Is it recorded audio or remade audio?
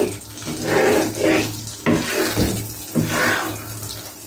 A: recorded